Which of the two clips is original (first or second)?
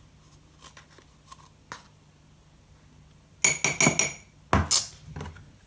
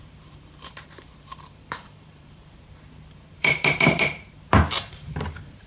first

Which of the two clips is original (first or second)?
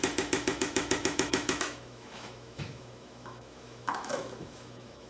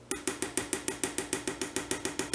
second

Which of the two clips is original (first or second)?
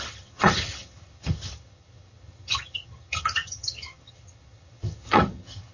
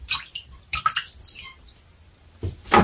second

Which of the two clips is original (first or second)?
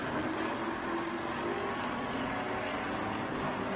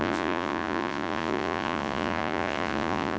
first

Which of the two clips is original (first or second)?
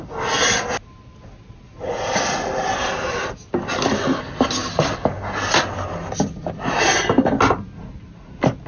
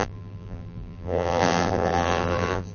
first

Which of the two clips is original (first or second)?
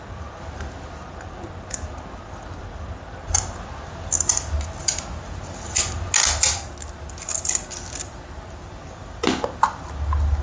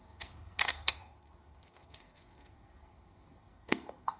first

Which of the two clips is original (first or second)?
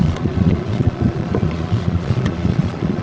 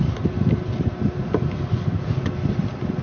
second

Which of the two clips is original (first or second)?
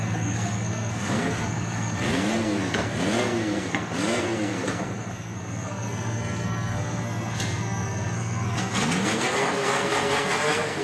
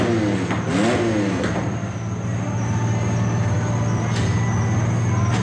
second